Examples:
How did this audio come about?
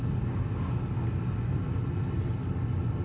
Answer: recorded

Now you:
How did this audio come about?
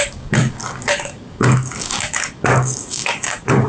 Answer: remade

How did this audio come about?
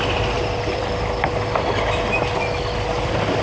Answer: recorded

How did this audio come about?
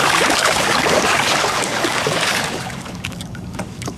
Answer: remade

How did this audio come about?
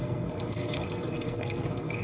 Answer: remade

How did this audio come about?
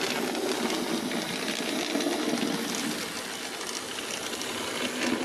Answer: recorded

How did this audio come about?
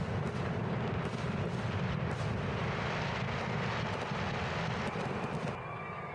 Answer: recorded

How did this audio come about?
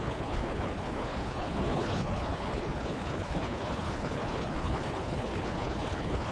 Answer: remade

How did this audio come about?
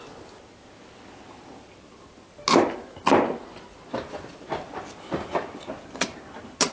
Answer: recorded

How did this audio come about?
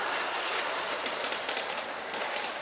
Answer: remade